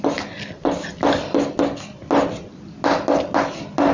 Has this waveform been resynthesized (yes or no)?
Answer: no